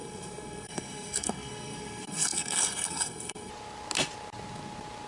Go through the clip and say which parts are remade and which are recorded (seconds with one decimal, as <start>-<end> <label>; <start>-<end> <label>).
0.0-3.5 remade; 3.5-5.1 recorded